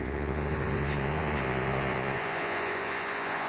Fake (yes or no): yes